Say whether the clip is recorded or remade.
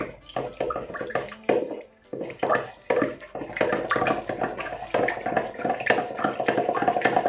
recorded